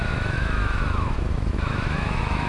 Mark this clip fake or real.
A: fake